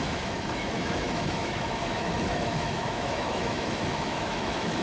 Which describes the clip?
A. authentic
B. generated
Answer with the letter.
B